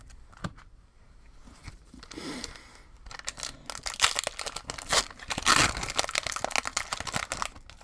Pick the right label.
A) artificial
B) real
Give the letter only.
B